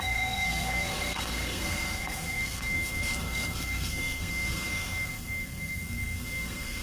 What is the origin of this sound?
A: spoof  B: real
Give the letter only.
A